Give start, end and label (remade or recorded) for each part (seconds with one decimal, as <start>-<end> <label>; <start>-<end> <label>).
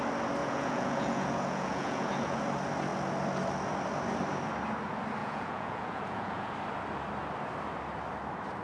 0.0-0.4 recorded; 0.4-2.4 remade; 2.4-5.2 recorded; 5.2-6.5 remade; 6.5-8.6 recorded